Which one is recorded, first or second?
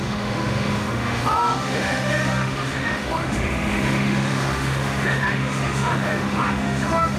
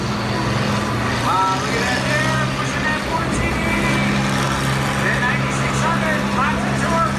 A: second